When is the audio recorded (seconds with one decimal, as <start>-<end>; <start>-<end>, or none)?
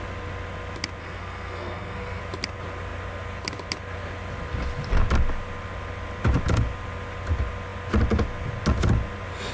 0.0-1.0; 2.2-9.5